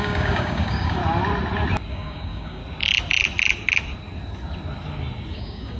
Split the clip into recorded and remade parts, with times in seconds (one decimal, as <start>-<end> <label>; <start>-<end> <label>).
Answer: 0.0-1.0 remade; 1.0-1.9 recorded; 1.9-2.6 remade; 2.6-5.3 recorded; 5.3-5.8 remade